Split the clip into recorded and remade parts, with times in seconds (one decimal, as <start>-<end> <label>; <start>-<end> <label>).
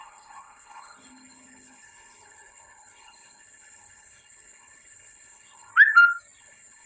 0.0-5.7 remade; 5.7-6.4 recorded; 6.4-6.9 remade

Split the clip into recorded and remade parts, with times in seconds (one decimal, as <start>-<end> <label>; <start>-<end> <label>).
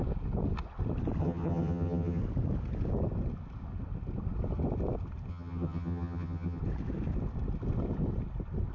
0.0-1.2 recorded; 1.2-2.2 remade; 2.2-5.3 recorded; 5.3-6.6 remade; 6.6-8.7 recorded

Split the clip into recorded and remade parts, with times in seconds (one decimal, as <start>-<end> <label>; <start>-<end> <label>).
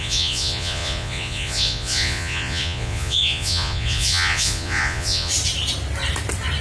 0.0-5.3 remade; 5.3-6.6 recorded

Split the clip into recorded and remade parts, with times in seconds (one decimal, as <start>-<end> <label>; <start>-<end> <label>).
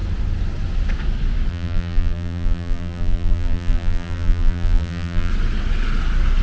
0.0-1.5 recorded; 1.5-5.3 remade; 5.3-6.4 recorded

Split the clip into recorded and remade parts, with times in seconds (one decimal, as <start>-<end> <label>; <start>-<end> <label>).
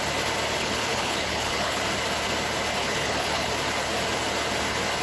0.0-0.6 recorded; 0.6-1.8 remade; 1.8-2.8 recorded; 2.8-3.5 remade; 3.5-5.0 recorded